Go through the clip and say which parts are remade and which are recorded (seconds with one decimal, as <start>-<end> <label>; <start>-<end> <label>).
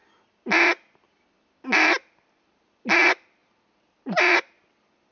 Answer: 0.0-5.1 recorded